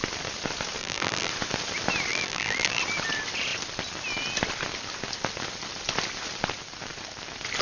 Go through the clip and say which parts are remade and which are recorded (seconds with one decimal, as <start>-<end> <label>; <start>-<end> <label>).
0.0-0.8 recorded; 0.8-1.3 remade; 1.3-2.1 recorded; 2.1-2.8 remade; 2.8-7.6 recorded